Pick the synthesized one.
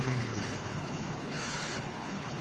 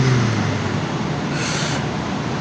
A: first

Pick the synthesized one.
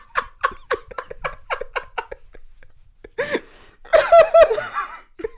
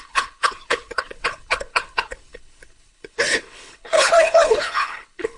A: second